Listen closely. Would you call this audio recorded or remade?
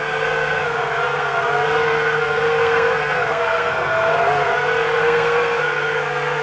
remade